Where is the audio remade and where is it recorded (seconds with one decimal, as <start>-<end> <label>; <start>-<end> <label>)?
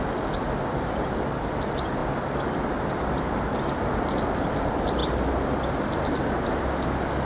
0.0-7.3 recorded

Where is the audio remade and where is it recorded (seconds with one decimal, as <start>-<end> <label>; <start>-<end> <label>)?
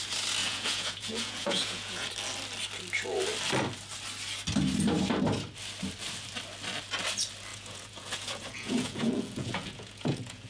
0.0-0.4 recorded; 0.4-2.1 remade; 2.1-7.5 recorded; 7.5-10.5 remade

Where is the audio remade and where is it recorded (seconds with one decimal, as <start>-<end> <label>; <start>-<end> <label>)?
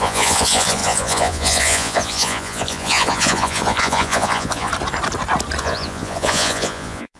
0.0-4.7 remade; 4.7-5.6 recorded; 5.6-7.2 remade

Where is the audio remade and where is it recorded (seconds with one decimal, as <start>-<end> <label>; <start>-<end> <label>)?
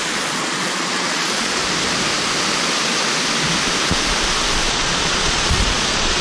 0.0-1.6 remade; 1.6-4.7 recorded; 4.7-6.2 remade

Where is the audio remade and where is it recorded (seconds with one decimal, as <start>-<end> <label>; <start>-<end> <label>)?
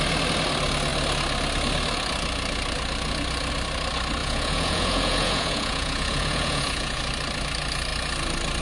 0.0-4.2 recorded; 4.2-7.0 remade; 7.0-8.6 recorded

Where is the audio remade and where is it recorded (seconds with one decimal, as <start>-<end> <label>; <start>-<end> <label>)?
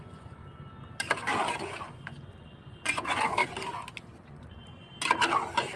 0.0-0.4 remade; 0.4-1.6 recorded; 1.6-3.4 remade; 3.4-4.0 recorded; 4.0-4.9 remade; 4.9-5.8 recorded